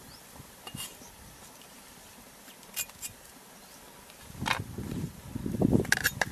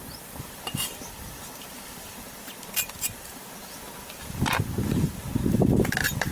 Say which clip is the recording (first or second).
first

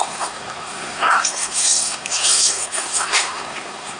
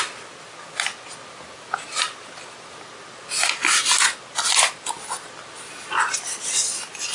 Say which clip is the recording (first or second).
second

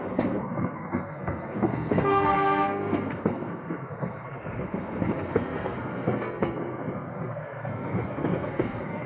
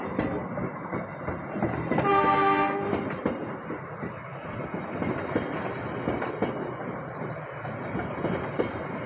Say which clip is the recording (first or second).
second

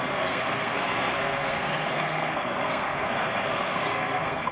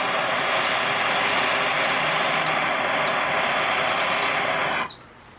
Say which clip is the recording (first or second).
second